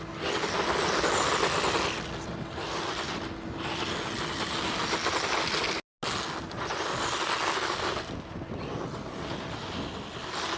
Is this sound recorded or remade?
recorded